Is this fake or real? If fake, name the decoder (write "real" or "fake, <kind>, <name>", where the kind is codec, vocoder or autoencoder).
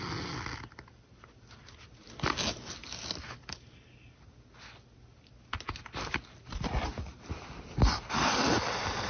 real